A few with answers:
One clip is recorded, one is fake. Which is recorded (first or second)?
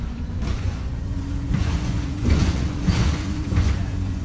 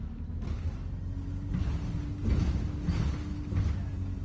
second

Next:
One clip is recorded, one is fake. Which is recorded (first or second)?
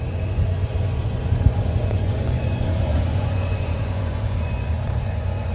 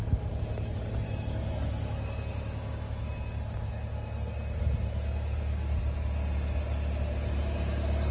second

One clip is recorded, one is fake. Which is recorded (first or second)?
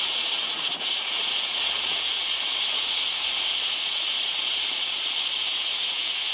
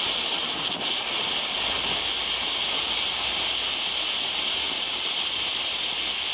second